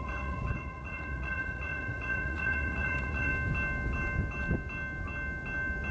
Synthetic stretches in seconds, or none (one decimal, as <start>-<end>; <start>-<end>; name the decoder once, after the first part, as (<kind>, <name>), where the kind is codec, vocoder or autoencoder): 0.0-3.3 (vocoder, Vocos)